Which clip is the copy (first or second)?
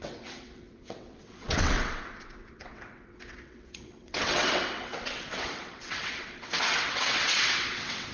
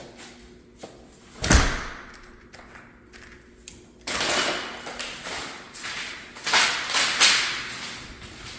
first